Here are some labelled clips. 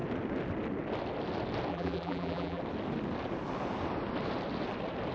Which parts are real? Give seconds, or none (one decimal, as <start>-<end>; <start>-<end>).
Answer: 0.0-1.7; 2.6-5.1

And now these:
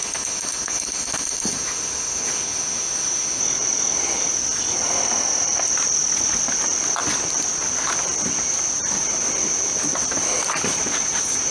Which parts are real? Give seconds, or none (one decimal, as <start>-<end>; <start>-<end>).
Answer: 3.4-11.5

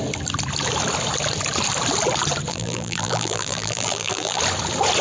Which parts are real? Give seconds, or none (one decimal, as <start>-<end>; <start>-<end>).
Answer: 0.0-2.5; 4.4-5.0

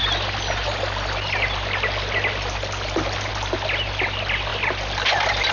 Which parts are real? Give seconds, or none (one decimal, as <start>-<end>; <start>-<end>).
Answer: 0.0-5.5

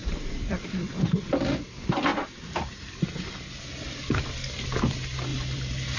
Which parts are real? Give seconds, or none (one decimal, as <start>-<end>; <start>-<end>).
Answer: 1.3-2.1; 3.5-5.3

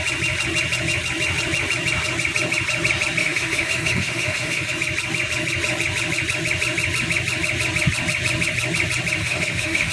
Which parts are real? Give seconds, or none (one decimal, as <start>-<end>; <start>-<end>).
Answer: 0.0-3.2; 4.7-9.2

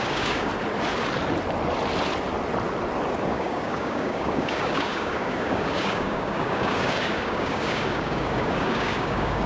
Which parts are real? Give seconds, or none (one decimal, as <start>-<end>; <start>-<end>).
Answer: 0.5-3.3

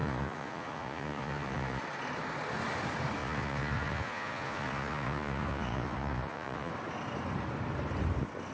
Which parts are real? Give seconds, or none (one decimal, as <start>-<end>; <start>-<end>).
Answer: 1.8-3.2; 6.7-8.5